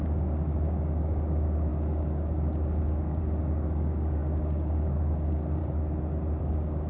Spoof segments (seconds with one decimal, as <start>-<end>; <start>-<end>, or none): 0.0-5.6; 6.4-6.9